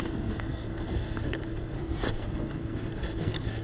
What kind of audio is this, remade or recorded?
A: remade